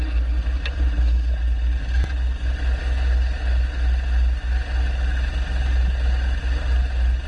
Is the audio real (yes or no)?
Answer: yes